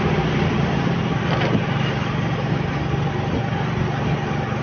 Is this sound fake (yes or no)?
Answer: no